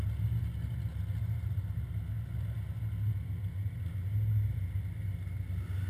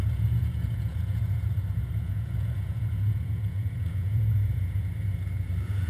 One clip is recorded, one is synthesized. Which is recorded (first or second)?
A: first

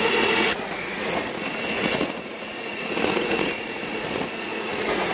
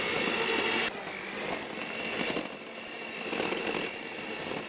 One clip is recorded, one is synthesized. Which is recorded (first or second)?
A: second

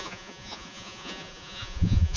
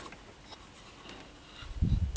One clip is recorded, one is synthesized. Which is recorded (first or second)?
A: second